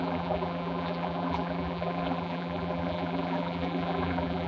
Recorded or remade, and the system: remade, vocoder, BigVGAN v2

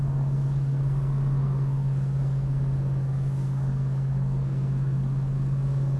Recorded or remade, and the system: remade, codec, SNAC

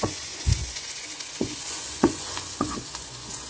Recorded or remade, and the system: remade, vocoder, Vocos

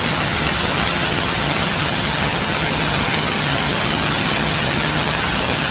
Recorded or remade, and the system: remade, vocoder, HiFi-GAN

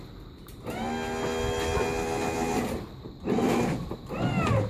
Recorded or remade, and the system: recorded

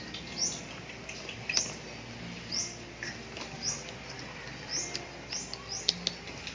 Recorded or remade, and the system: recorded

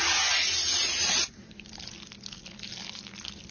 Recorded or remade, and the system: recorded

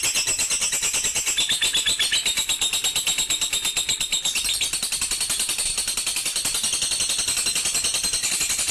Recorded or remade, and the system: recorded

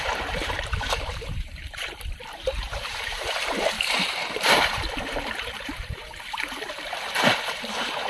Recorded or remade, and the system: remade, vocoder, BigVGAN v2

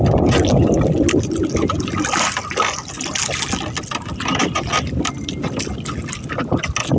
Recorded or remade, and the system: recorded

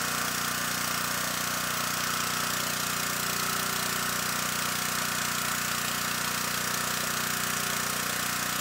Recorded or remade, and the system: recorded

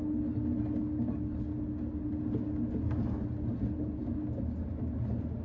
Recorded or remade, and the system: recorded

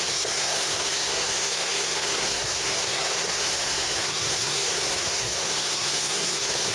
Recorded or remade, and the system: remade, codec, SNAC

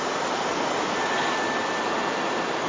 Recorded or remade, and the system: recorded